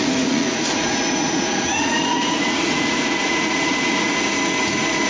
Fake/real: fake